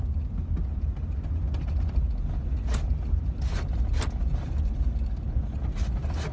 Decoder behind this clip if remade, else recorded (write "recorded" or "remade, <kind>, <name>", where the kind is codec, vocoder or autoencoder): recorded